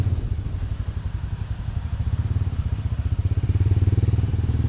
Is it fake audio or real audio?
fake